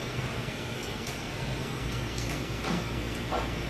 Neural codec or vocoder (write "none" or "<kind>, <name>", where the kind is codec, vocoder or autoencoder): codec, SNAC